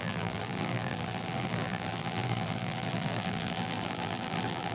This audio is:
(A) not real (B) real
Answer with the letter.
A